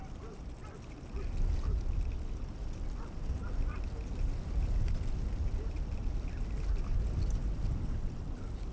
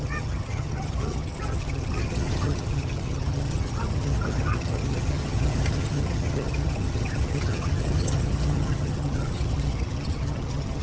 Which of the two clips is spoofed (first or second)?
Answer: second